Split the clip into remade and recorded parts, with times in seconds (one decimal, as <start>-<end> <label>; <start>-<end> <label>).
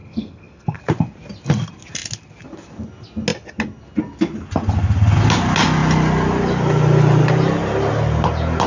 0.0-0.8 remade; 0.8-8.7 recorded